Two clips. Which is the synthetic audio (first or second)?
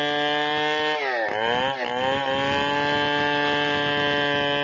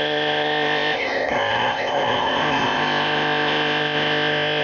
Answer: second